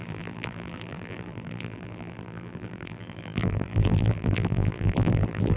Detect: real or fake fake